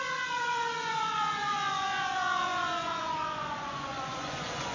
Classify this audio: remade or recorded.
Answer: remade